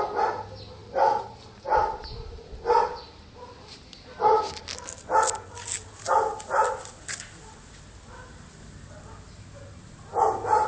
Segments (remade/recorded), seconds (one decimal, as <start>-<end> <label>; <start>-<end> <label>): 0.0-10.7 recorded